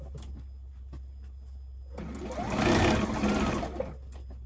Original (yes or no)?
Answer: yes